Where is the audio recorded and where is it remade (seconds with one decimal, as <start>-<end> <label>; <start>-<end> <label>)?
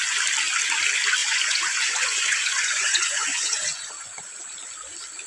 0.0-1.2 recorded; 1.2-4.4 remade; 4.4-5.3 recorded